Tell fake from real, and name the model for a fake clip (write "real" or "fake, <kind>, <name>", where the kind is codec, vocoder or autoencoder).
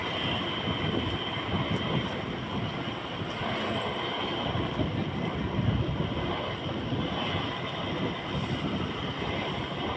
real